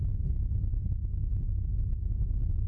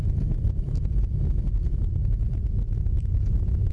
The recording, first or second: first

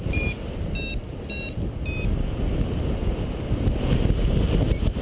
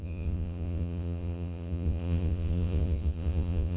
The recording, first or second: first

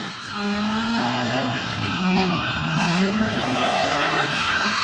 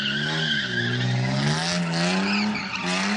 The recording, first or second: second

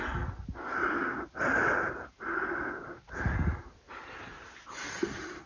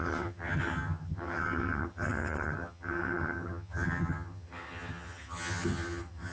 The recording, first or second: first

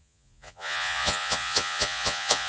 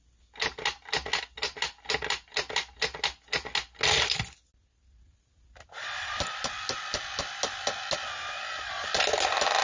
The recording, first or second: second